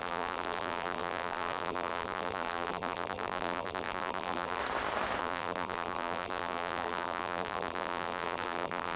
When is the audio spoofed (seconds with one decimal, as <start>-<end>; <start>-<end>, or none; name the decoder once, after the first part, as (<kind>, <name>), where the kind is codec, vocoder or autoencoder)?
0.0-4.6 (vocoder, BigVGAN v2); 5.2-9.0